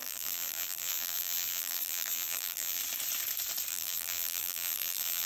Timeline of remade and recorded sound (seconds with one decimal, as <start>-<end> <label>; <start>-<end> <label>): 0.0-2.8 remade; 2.8-3.7 recorded; 3.7-5.3 remade